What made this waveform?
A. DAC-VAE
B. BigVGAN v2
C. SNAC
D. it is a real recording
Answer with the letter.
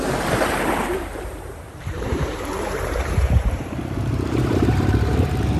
B